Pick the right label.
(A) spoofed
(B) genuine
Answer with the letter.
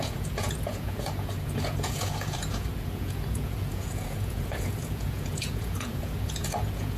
A